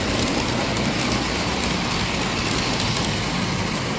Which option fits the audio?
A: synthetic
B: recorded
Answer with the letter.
B